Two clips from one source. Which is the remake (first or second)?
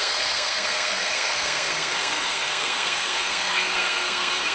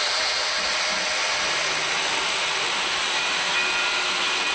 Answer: first